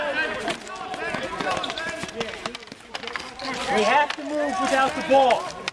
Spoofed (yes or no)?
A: no